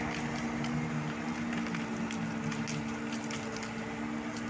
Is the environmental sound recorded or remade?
recorded